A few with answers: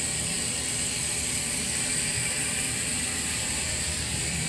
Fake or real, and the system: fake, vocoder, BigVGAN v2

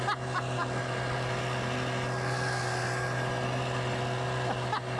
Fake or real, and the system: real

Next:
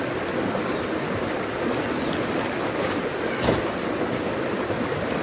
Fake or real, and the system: real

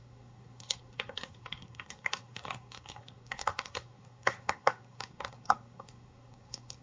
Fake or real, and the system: fake, codec, SNAC